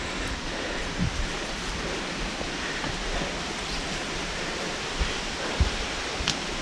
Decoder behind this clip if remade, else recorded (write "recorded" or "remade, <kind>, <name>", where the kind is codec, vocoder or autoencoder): recorded